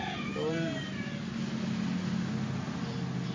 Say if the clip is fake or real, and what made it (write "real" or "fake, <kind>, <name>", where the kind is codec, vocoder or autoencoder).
real